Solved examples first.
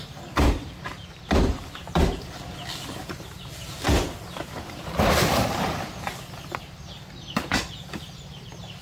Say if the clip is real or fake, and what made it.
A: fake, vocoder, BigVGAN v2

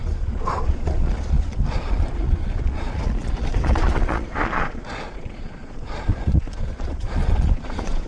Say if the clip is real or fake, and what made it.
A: fake, vocoder, Vocos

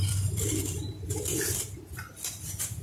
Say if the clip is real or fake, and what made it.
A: fake, vocoder, BigVGAN v2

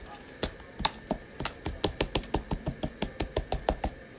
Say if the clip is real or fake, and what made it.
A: fake, vocoder, BigVGAN v2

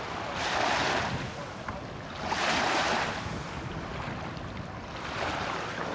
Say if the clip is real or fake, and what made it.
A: real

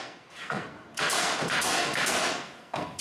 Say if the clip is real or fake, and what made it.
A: fake, codec, SNAC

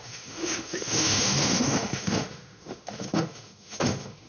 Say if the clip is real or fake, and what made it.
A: fake, autoencoder, DAC-VAE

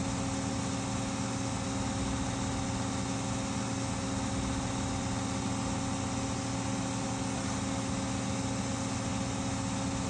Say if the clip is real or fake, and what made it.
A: real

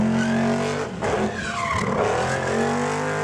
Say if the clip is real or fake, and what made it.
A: real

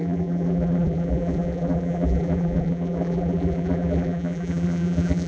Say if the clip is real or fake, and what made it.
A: fake, vocoder, BigVGAN v2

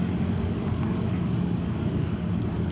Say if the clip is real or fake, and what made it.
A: fake, codec, DAC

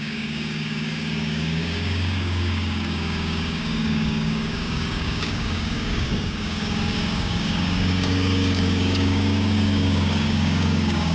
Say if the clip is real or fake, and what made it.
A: fake, codec, DAC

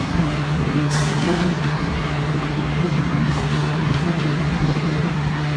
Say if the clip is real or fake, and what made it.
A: fake, codec, SNAC